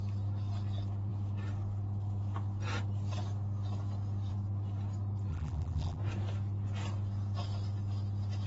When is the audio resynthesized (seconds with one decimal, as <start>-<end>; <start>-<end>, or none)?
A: 5.3-6.0